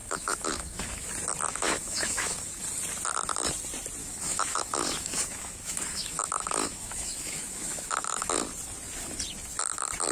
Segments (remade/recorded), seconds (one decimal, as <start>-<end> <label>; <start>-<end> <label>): 0.0-1.1 remade; 1.1-1.5 recorded; 1.5-2.6 remade; 2.6-4.0 recorded; 4.0-8.4 remade; 8.4-10.1 recorded